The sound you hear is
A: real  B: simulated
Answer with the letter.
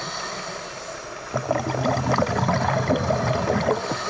A